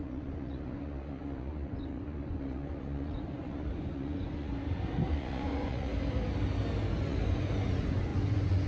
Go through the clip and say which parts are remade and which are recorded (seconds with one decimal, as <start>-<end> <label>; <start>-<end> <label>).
0.0-4.5 remade; 4.5-5.1 recorded; 5.1-5.9 remade; 5.9-6.9 recorded; 6.9-8.7 remade